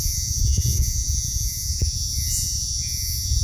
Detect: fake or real fake